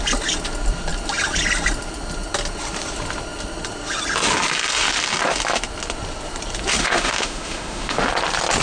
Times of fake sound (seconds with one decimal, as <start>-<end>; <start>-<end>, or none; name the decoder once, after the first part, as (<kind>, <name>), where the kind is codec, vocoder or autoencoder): 6.8-8.1 (autoencoder, DAC-VAE)